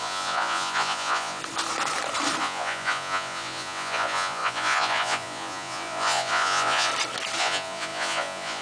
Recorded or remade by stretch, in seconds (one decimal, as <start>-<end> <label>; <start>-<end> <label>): 0.0-1.4 remade; 1.4-2.4 recorded; 2.4-6.9 remade; 6.9-7.4 recorded; 7.4-8.6 remade